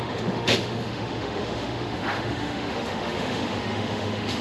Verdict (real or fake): fake